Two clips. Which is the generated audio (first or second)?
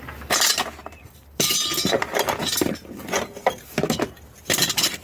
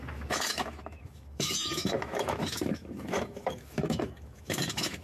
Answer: second